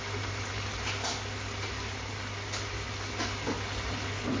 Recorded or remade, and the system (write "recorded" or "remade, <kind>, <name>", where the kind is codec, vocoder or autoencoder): recorded